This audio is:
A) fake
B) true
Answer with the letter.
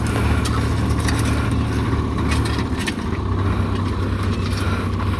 B